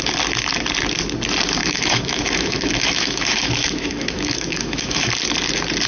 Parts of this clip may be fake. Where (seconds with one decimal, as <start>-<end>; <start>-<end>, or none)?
1.6-5.1